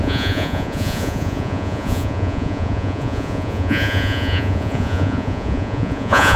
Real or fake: fake